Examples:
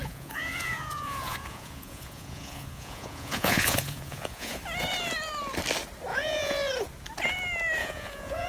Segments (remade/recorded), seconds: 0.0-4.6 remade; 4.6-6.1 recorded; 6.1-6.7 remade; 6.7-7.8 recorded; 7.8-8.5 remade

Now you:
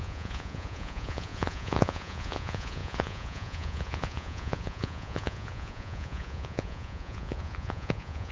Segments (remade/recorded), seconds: 0.0-8.3 remade

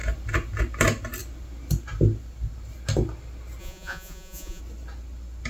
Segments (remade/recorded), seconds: 0.0-3.6 recorded; 3.6-4.6 remade; 4.6-5.5 recorded

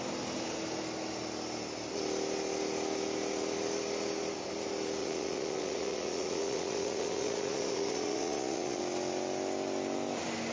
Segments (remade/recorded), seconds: 0.0-5.0 recorded; 5.0-8.8 remade; 8.8-10.5 recorded

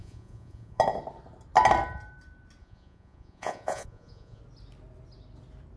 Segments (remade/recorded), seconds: 0.0-0.8 remade; 0.8-2.6 recorded; 2.6-4.4 remade; 4.4-5.8 recorded

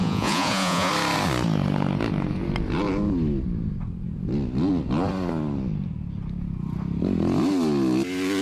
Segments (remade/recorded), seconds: 0.0-0.9 remade; 0.9-8.4 recorded

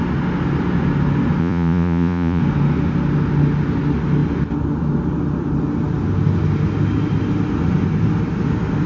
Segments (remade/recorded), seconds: 0.0-1.4 recorded; 1.4-2.4 remade; 2.4-8.9 recorded

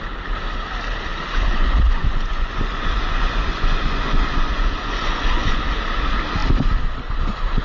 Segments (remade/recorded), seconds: 0.0-1.1 recorded; 1.1-5.6 remade; 5.6-7.6 recorded